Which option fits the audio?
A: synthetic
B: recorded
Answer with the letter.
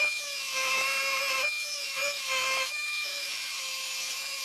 A